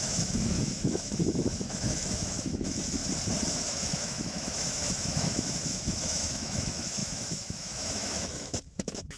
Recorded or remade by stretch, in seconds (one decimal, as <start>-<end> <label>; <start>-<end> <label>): 0.0-3.0 remade; 3.0-3.5 recorded; 3.5-9.2 remade